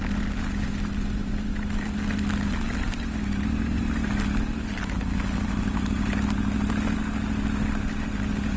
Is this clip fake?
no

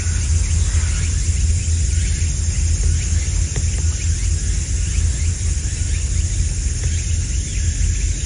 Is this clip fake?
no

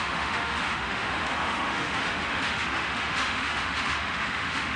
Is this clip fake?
yes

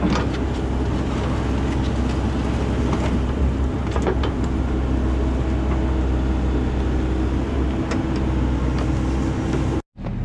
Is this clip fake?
no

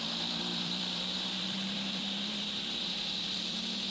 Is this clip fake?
yes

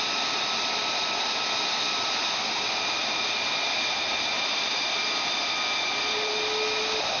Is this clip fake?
no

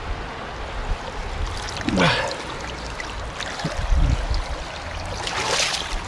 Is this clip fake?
no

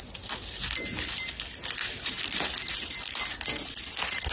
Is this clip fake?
no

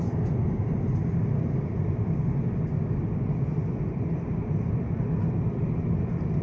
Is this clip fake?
no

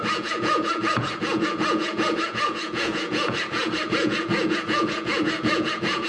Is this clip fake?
yes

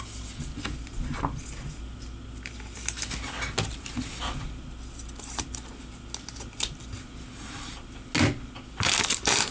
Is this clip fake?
no